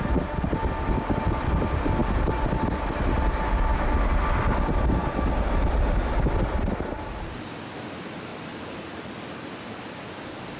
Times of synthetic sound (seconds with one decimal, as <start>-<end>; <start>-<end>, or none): none

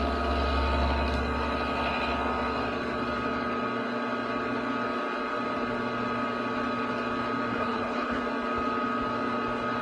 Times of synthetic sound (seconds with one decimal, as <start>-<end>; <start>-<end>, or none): 7.5-8.2

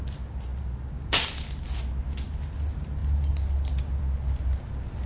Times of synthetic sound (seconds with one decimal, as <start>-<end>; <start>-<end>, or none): none